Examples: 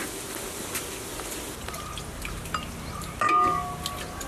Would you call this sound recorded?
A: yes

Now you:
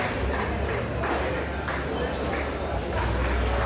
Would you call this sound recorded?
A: yes